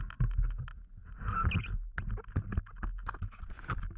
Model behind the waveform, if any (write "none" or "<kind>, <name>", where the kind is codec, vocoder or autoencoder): none